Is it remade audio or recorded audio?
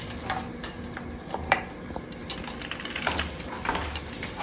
recorded